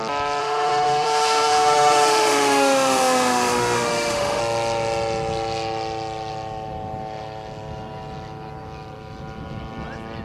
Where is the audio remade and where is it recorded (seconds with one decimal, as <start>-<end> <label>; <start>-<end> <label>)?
0.0-0.4 recorded; 0.4-4.4 remade; 4.4-10.2 recorded